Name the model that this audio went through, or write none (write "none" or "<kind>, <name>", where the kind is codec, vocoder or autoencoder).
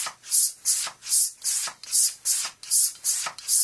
none